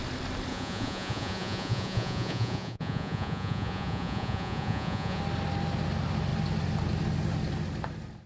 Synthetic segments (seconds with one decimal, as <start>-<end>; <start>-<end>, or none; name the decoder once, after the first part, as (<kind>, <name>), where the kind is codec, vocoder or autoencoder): 0.5-5.2 (vocoder, Vocos)